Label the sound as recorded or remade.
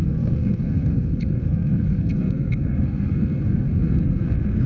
remade